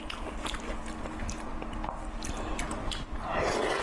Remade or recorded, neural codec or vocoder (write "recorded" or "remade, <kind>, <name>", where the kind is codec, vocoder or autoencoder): recorded